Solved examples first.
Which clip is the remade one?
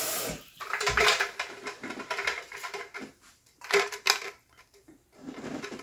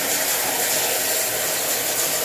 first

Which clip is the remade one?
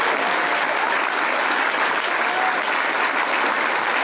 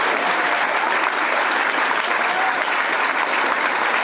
second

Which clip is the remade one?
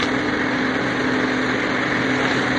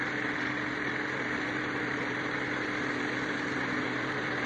second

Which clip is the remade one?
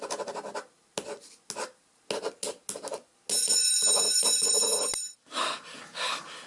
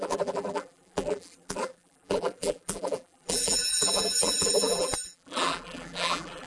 second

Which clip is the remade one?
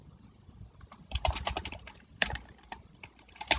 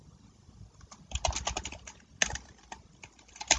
first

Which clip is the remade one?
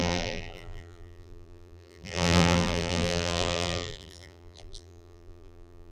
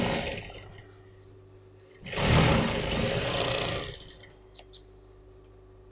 first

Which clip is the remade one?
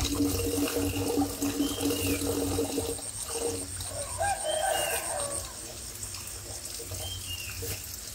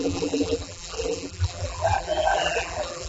second